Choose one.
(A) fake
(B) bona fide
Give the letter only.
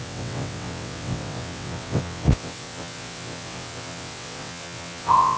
A